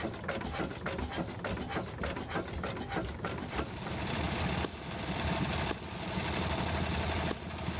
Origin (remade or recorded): recorded